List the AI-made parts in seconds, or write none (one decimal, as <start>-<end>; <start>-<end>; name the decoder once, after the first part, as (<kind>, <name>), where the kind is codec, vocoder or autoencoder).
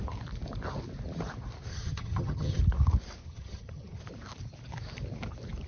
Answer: 1.7-2.6 (vocoder, HiFi-GAN); 3.2-4.0